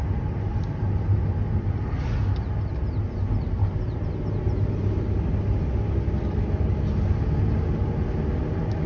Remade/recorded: recorded